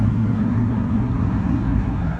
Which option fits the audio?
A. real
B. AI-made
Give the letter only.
B